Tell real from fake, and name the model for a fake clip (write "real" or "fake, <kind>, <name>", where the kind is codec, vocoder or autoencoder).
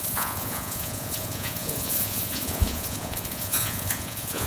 fake, vocoder, Vocos